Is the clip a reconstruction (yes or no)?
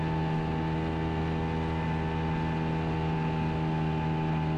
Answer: no